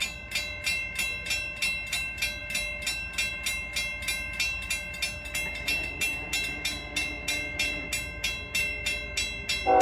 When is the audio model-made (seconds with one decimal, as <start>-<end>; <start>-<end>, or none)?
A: none